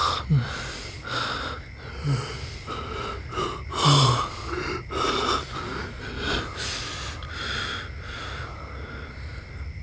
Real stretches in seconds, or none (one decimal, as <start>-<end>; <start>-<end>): 0.0-9.8